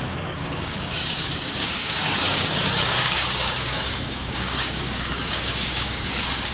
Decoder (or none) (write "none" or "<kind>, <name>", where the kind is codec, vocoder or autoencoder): codec, DAC